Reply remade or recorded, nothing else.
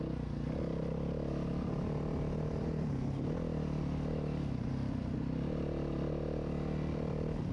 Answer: recorded